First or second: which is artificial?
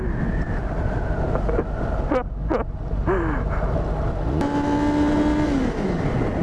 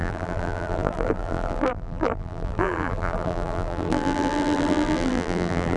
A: second